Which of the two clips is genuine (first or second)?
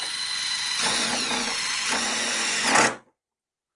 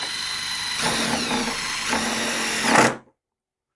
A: second